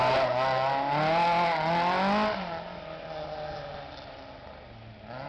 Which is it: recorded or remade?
recorded